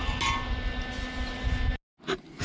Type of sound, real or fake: real